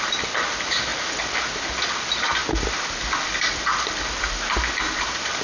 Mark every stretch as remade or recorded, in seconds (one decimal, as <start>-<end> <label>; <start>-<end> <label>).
0.0-5.4 recorded